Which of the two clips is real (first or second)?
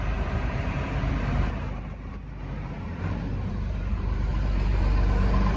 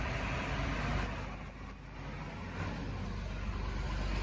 second